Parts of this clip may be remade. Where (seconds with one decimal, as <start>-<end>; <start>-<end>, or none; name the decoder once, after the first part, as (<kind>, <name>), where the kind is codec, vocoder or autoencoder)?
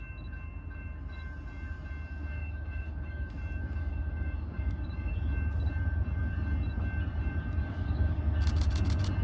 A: 2.4-3.3 (codec, DAC); 3.8-5.1; 7.6-8.2